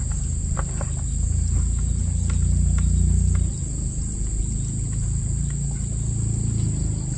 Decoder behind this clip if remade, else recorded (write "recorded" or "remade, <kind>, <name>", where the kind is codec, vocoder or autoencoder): recorded